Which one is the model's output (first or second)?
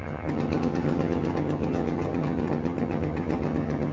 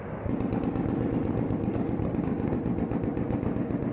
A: first